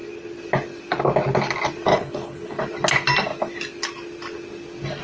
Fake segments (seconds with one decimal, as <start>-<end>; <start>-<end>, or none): 1.9-2.6